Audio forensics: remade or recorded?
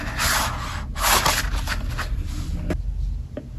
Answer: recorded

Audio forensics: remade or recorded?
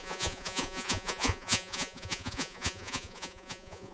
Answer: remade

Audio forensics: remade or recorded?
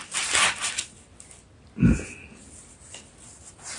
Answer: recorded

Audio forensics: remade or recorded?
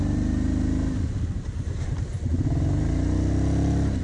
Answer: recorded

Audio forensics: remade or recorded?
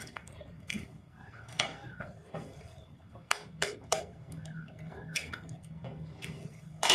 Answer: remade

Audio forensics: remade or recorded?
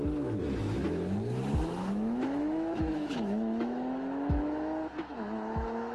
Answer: remade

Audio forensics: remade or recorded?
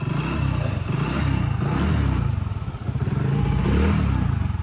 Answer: recorded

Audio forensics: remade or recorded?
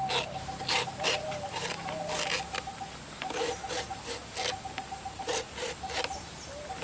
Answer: recorded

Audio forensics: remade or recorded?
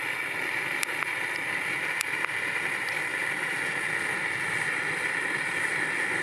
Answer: recorded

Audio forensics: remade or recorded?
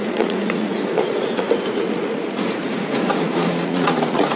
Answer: remade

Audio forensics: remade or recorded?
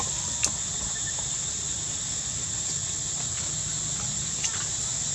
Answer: recorded